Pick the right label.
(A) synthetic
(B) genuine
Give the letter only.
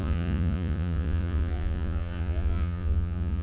A